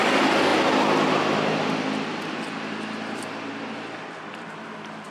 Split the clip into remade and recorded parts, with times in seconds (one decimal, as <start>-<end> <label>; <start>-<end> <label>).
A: 0.0-5.1 recorded